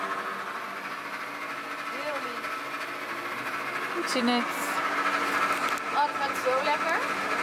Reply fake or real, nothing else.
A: real